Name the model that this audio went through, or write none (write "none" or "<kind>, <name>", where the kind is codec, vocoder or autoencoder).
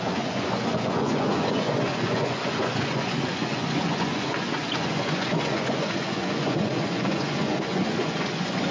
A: vocoder, Vocos